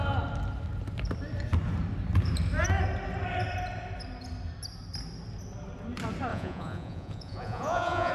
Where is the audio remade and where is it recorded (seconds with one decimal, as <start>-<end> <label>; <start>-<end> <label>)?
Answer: 0.0-6.3 recorded; 6.3-8.1 remade